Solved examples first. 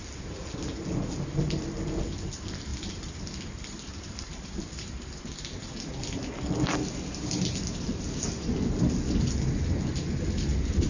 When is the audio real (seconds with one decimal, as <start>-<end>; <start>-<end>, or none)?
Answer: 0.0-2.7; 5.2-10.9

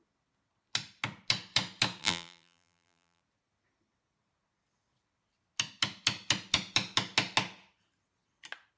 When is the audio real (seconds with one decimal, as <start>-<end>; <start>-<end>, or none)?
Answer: 0.0-2.0; 3.2-8.8

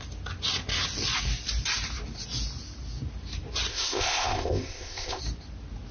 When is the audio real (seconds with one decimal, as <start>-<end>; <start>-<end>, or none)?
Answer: 0.0-3.7; 5.2-5.9